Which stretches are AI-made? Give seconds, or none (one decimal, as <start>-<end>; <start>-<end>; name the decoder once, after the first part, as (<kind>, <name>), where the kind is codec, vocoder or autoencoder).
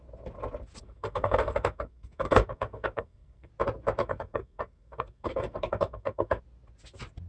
0.8-3.5 (codec, SNAC); 4.0-6.4